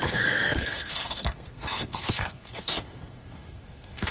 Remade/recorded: remade